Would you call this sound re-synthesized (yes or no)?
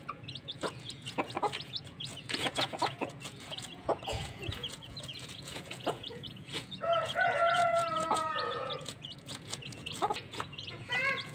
yes